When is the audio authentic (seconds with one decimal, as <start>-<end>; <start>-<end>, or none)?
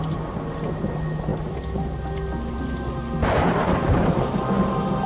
0.0-3.2; 4.1-5.1